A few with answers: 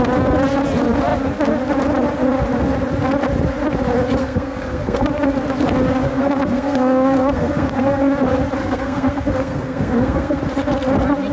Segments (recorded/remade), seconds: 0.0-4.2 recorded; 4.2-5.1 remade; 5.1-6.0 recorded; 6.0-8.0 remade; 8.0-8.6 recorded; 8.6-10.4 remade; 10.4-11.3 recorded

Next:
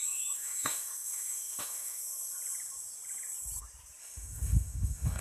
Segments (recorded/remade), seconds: 0.0-2.0 remade; 2.0-4.0 recorded; 4.0-5.2 remade